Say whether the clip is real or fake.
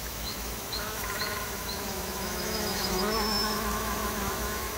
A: fake